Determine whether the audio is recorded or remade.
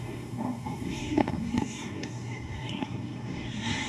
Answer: remade